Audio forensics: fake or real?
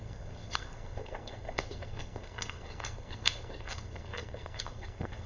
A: fake